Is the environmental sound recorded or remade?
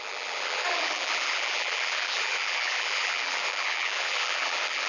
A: remade